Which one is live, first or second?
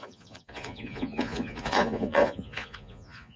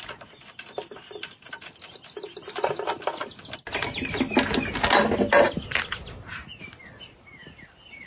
second